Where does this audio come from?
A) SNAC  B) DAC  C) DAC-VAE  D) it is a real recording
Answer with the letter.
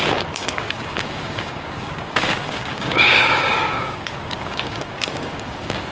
B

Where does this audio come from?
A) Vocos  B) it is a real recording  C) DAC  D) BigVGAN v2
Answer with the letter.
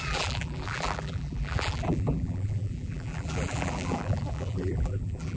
D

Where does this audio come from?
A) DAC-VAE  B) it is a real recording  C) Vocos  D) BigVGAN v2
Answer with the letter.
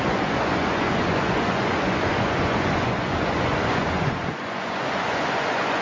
C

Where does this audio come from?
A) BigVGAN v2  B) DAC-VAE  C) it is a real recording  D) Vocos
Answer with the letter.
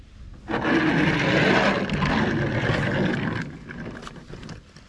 C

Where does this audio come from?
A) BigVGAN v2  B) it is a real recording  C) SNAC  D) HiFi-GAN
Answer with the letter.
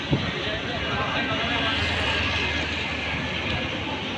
B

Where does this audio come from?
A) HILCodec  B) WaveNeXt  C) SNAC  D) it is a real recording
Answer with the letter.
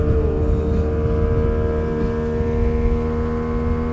D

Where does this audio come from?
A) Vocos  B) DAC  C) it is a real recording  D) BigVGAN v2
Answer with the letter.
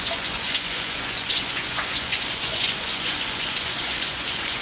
A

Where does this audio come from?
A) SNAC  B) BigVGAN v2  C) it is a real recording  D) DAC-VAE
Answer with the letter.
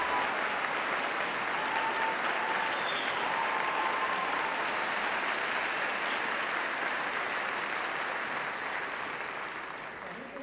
C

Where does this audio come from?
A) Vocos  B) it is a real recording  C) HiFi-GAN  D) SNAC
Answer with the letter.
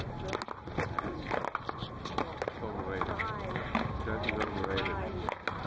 B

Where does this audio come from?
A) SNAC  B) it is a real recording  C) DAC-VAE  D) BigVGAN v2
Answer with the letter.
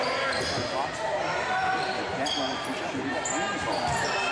B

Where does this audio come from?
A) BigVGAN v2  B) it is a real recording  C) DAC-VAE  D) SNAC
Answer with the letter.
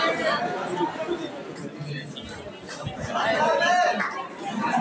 B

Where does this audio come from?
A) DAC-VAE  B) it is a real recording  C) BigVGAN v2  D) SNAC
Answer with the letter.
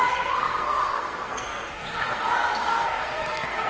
D